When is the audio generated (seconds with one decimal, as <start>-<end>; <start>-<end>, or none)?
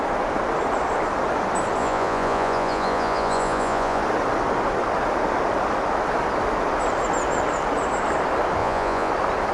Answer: 1.8-4.0; 8.6-9.1